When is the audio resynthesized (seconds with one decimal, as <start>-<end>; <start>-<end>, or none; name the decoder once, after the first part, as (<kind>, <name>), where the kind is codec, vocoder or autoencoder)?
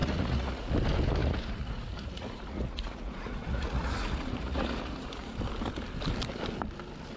0.0-0.7 (vocoder, Vocos); 1.2-5.4